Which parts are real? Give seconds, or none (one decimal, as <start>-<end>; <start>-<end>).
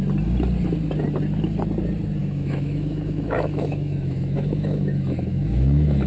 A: 0.0-2.2